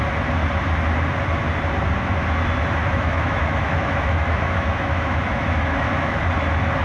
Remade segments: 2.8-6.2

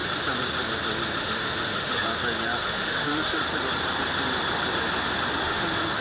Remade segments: 1.2-2.1; 2.6-3.4; 5.4-6.0

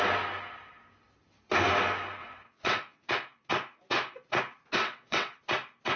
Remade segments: 2.2-3.1; 4.8-5.4

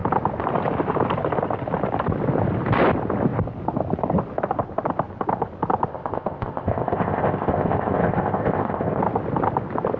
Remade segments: 5.9-9.0